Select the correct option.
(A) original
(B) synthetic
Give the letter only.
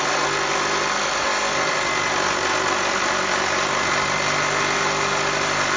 A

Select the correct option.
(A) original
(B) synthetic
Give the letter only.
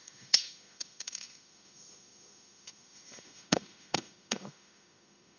B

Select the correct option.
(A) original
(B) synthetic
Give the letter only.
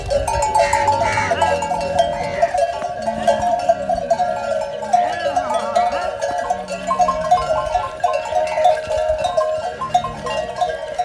A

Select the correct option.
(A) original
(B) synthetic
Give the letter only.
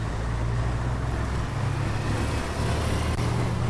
A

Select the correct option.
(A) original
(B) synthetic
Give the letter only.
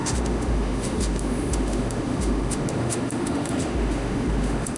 B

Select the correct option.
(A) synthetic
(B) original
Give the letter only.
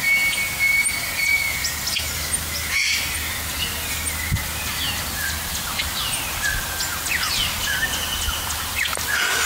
B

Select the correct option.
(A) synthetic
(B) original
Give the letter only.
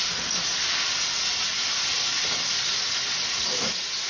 B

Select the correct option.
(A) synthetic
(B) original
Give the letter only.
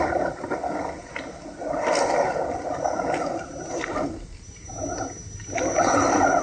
B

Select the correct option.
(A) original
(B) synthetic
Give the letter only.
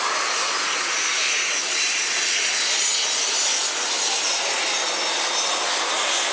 A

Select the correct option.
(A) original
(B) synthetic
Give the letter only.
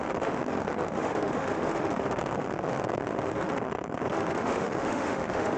B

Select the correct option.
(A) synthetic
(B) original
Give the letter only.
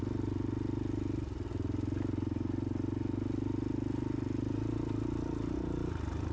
B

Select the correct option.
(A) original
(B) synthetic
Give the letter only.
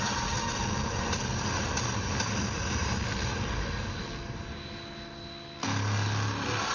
A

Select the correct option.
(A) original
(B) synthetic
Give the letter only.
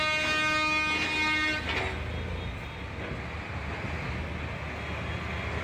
A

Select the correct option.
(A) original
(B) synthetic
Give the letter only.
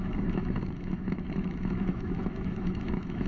B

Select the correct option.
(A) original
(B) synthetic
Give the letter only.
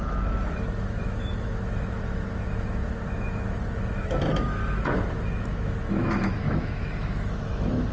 B